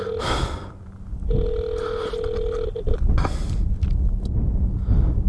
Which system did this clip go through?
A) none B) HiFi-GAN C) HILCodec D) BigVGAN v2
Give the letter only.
A